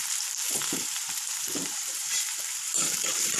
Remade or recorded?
remade